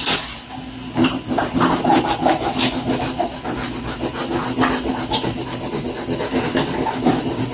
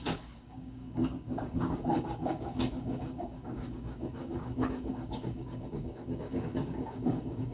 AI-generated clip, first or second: second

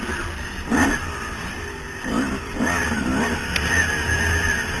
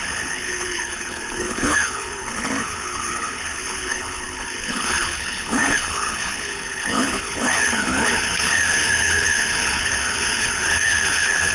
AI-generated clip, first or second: second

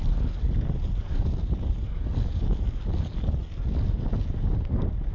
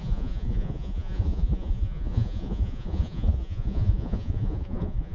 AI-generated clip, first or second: second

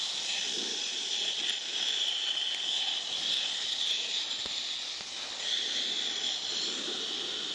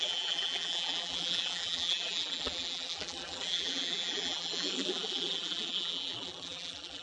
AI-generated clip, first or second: second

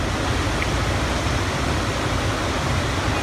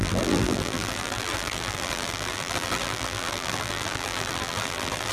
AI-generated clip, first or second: second